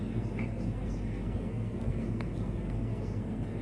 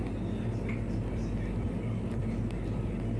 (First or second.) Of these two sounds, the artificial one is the first